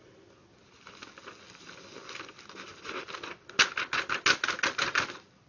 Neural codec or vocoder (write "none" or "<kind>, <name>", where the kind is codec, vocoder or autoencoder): none